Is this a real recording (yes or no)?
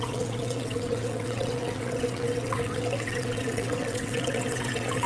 no